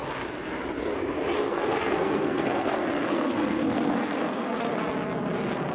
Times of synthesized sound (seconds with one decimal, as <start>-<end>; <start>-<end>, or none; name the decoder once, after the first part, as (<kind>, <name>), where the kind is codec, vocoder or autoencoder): 1.4-4.8 (codec, SNAC)